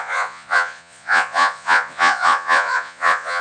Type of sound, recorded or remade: remade